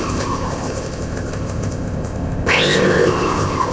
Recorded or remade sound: remade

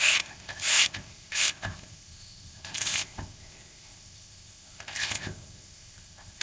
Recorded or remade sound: remade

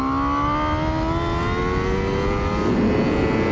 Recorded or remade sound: recorded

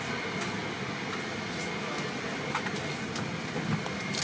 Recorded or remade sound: recorded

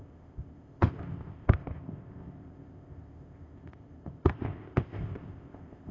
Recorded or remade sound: remade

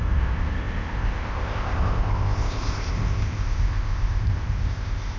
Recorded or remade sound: remade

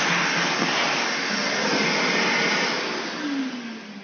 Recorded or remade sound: recorded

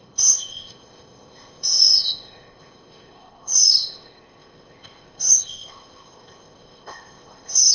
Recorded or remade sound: remade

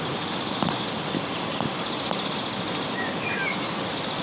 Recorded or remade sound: recorded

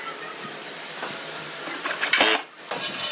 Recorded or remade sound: recorded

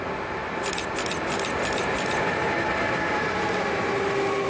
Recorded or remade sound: recorded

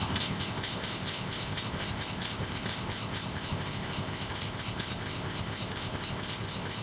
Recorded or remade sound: remade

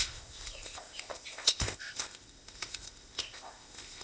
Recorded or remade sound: remade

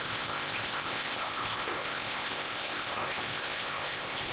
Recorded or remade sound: remade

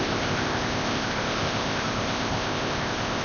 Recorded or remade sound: remade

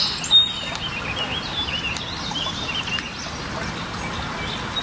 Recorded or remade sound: recorded